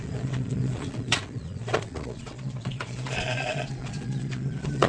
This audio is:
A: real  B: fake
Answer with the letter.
B